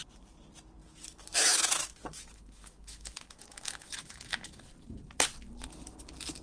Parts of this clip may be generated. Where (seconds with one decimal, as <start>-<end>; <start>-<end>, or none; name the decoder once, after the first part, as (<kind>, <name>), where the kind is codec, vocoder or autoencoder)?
0.8-4.6 (autoencoder, DAC-VAE)